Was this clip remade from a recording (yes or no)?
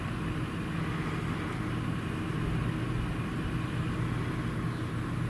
no